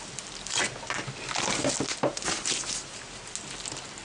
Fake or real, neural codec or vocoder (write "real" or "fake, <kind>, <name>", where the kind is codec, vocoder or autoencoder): real